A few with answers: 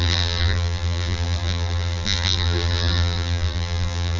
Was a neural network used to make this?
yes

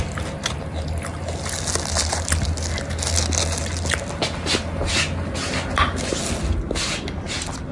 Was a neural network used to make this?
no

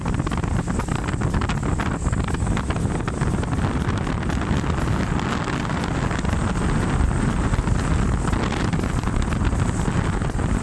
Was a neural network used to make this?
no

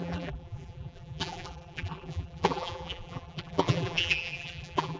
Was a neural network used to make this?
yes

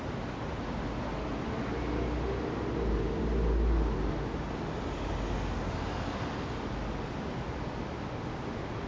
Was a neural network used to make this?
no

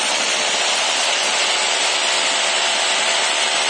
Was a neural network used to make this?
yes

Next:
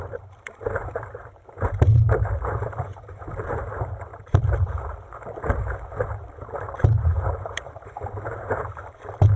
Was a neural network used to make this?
yes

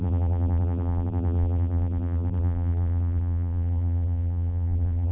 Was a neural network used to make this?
yes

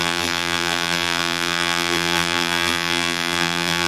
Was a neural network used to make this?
yes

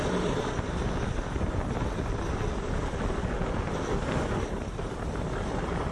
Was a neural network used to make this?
no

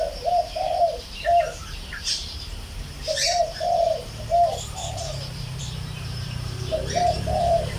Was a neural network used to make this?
yes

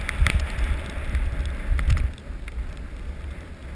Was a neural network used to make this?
no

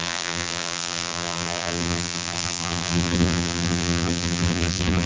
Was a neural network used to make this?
yes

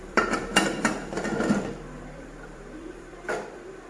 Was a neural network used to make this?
yes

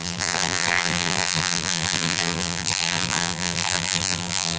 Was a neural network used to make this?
yes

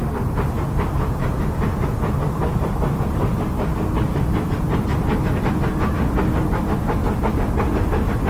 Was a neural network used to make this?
no